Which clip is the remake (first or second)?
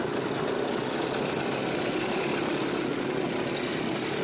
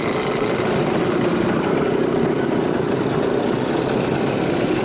second